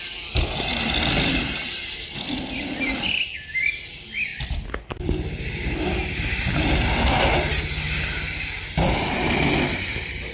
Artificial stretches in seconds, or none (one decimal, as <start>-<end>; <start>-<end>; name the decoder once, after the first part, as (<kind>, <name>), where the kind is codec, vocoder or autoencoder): none